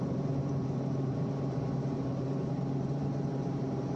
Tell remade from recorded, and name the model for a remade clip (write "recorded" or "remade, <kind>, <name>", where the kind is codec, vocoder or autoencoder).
remade, vocoder, BigVGAN v2